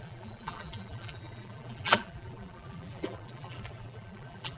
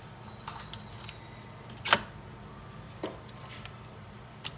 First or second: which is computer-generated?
first